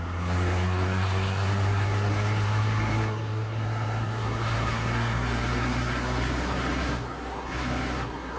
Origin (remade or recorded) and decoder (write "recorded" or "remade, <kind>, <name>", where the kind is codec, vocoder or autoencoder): remade, codec, SNAC